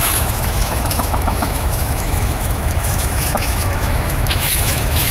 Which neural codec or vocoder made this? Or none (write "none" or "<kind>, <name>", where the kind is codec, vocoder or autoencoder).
autoencoder, DAC-VAE